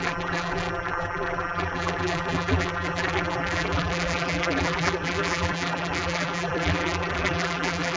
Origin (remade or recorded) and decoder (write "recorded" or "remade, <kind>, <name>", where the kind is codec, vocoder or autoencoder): remade, vocoder, BigVGAN v2